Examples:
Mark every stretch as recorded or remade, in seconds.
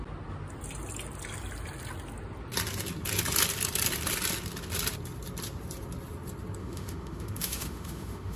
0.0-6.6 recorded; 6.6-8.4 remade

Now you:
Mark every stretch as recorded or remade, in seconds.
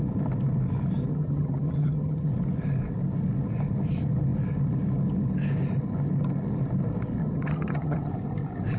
0.0-1.1 recorded; 1.1-2.3 remade; 2.3-7.2 recorded; 7.2-8.1 remade; 8.1-8.8 recorded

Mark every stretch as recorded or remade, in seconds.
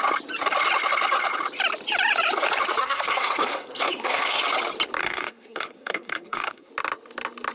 0.0-2.8 recorded; 2.8-4.4 remade; 4.4-5.0 recorded; 5.0-6.7 remade; 6.7-7.5 recorded